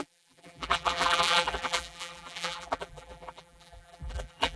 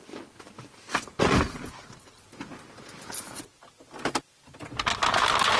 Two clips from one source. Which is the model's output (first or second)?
first